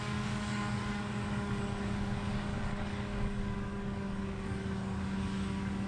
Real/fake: fake